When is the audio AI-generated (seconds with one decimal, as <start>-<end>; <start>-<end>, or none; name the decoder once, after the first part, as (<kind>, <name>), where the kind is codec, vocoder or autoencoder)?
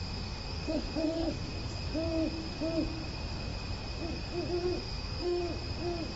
0.0-1.5 (autoencoder, DAC-VAE); 4.8-5.4